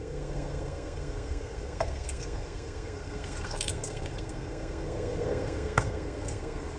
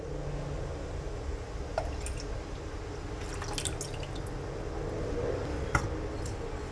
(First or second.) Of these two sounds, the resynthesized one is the first